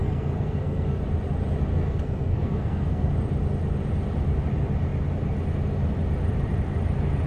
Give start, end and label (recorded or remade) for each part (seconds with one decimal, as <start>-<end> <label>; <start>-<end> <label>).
0.0-1.0 remade; 1.0-1.7 recorded; 1.7-3.1 remade; 3.1-7.3 recorded